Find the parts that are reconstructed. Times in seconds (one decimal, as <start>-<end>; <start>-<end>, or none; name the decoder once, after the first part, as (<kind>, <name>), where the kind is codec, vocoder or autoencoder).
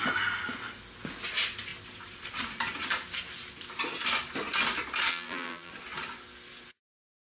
5.1-5.7 (vocoder, BigVGAN v2)